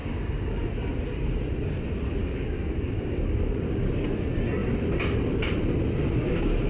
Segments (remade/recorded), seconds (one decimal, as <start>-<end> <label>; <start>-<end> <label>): 0.0-0.6 remade; 0.6-2.2 recorded; 2.2-3.4 remade; 3.4-6.7 recorded